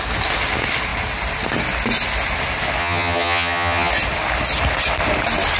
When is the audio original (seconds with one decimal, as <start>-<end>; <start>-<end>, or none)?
0.0-2.8; 3.9-5.6